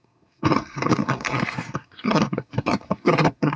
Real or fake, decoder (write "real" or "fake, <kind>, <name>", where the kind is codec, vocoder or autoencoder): fake, codec, SNAC